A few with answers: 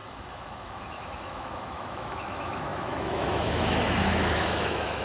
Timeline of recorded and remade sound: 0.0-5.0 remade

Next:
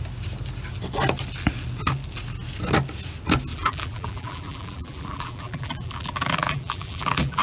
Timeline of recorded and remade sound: 0.0-3.5 recorded; 3.5-7.4 remade

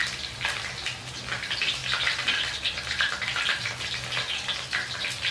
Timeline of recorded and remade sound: 0.0-5.3 recorded